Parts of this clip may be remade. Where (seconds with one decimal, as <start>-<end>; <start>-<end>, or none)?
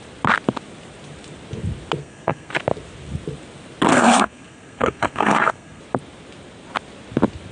2.0-2.5; 3.9-5.8